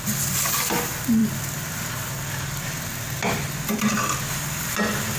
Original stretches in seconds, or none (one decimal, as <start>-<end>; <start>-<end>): 0.0-5.2